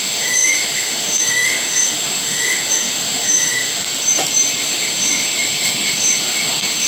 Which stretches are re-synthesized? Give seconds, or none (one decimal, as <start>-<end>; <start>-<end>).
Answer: 0.0-3.8; 4.6-6.9